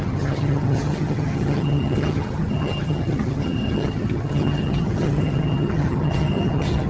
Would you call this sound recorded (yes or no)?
no